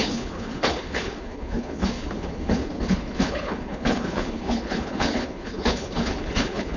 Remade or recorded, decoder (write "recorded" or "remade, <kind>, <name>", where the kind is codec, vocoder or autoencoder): remade, codec, HILCodec